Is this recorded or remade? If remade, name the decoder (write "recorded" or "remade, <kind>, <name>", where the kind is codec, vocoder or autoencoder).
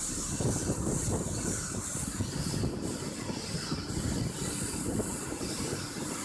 recorded